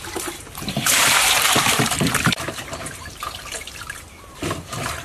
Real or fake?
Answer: fake